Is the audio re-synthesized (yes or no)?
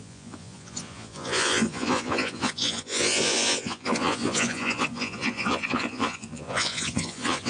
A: yes